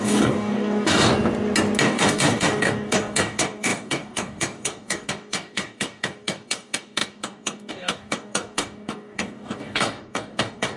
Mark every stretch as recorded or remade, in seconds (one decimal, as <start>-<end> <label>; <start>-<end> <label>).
0.0-1.1 remade; 1.1-1.8 recorded; 1.8-10.8 remade